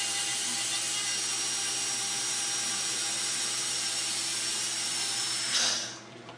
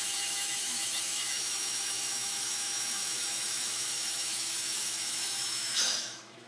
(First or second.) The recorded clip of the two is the first